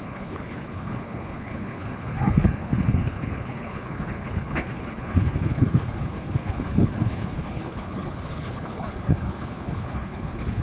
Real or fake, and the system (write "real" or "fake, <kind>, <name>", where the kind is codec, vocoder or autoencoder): fake, codec, HILCodec